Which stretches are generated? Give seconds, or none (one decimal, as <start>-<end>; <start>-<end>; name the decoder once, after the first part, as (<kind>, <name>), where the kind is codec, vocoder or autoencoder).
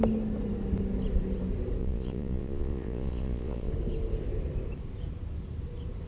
1.8-3.7 (vocoder, Vocos)